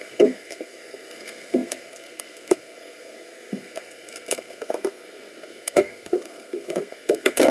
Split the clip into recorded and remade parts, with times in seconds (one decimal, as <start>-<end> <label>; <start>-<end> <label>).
0.0-7.5 remade

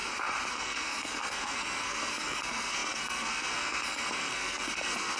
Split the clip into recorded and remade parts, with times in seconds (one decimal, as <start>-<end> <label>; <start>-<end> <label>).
0.0-0.5 recorded; 0.5-5.2 remade

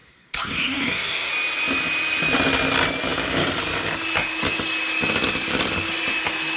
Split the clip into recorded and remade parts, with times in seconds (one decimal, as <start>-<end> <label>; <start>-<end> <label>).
0.0-1.3 remade; 1.3-6.6 recorded

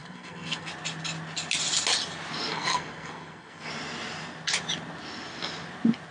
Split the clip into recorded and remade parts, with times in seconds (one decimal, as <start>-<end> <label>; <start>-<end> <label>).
0.0-0.7 remade; 0.7-2.5 recorded; 2.5-3.7 remade; 3.7-6.1 recorded

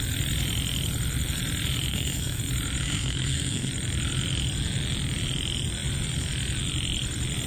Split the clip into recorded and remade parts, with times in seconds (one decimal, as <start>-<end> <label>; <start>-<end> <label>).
0.0-1.9 recorded; 1.9-2.4 remade; 2.4-2.8 recorded; 2.8-3.7 remade; 3.7-7.5 recorded

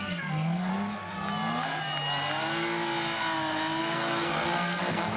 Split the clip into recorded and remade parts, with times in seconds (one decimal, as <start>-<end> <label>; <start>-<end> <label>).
0.0-0.7 remade; 0.7-3.8 recorded; 3.8-5.2 remade